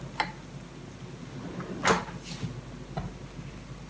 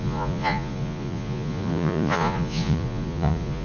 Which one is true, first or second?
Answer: first